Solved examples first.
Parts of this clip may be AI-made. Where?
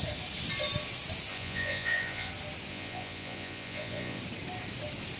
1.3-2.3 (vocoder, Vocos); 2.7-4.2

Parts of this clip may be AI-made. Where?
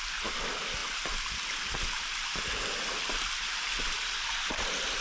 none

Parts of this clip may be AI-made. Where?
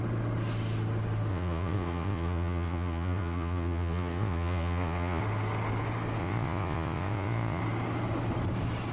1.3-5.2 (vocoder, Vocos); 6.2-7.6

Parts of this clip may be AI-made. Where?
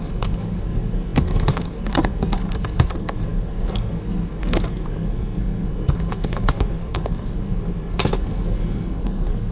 0.0-9.5 (codec, SNAC)